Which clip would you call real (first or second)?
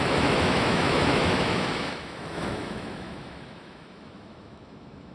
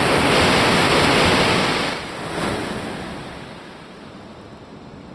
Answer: second